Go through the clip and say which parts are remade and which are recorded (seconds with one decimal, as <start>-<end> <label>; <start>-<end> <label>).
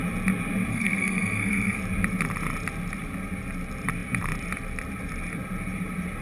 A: 0.0-0.7 recorded; 0.7-1.8 remade; 1.8-6.2 recorded